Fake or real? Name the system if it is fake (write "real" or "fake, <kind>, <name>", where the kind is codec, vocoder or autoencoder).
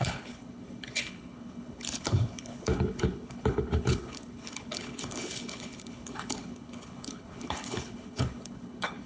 fake, codec, HILCodec